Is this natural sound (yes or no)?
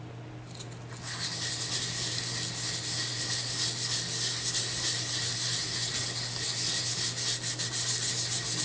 yes